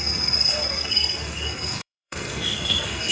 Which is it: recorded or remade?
remade